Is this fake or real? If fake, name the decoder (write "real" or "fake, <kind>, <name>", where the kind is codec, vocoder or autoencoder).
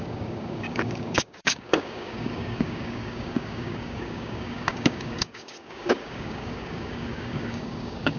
fake, codec, DAC